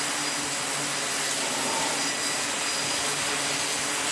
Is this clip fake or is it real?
real